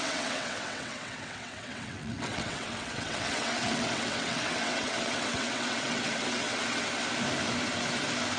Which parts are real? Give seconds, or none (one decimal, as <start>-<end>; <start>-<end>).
6.9-8.4